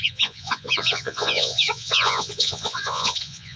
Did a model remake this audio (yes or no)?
yes